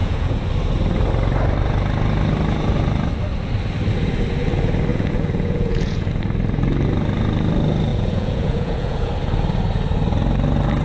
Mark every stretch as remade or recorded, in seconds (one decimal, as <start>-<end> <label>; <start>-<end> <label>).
0.0-0.5 remade; 0.5-4.9 recorded; 4.9-6.1 remade; 6.1-7.9 recorded; 7.9-9.1 remade; 9.1-10.8 recorded